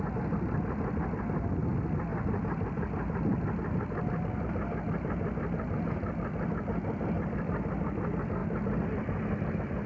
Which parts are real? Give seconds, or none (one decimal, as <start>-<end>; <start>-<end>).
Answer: 0.0-9.9